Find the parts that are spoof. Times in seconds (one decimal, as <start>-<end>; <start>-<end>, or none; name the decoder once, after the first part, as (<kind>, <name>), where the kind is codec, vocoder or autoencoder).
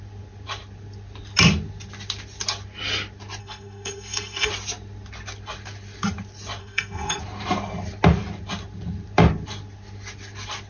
3.4-4.5 (codec, SNAC); 6.6-7.2